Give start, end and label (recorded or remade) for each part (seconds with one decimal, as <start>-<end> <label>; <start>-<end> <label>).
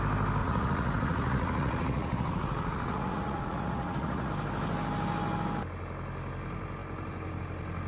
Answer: 0.0-0.4 recorded; 0.4-4.3 remade; 4.3-7.9 recorded